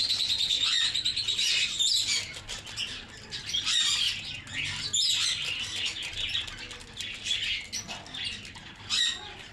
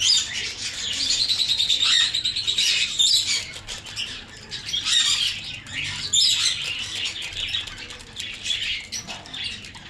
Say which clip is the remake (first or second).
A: second